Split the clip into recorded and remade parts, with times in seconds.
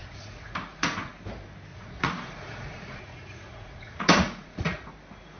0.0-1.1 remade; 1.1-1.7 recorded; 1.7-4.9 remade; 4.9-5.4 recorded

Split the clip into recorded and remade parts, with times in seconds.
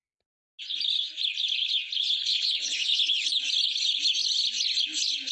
0.0-2.3 recorded; 2.3-3.0 remade; 3.0-5.3 recorded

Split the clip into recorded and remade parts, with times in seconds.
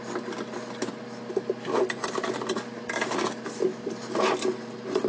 0.0-5.1 recorded